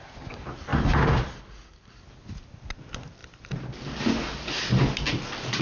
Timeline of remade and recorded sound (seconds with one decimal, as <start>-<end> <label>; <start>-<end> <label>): 0.0-5.6 recorded